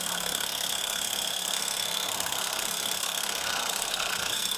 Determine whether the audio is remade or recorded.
remade